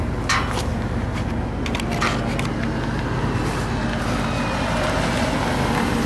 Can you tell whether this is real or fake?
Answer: real